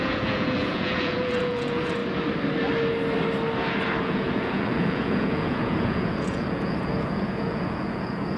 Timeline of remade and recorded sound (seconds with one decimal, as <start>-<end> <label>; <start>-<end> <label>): 0.0-2.0 remade; 2.0-4.0 recorded; 4.0-8.4 remade